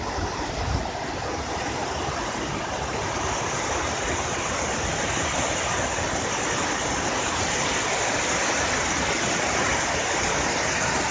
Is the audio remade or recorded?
recorded